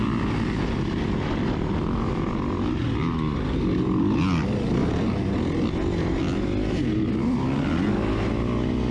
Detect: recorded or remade recorded